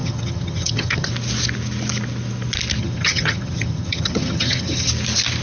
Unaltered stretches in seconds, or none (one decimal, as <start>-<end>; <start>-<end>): 1.1-2.8; 4.9-5.4